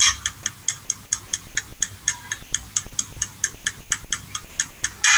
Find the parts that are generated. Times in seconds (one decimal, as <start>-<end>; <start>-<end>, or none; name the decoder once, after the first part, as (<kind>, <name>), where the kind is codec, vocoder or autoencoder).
none